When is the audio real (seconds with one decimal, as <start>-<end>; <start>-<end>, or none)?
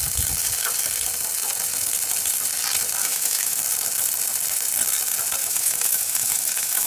0.0-3.0; 3.6-5.4